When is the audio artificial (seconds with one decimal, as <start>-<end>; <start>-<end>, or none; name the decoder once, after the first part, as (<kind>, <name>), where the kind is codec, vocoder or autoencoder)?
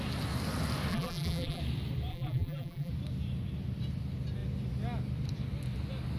0.9-1.6 (vocoder, BigVGAN v2); 2.1-2.9